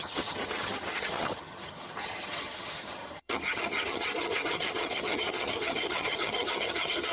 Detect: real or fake fake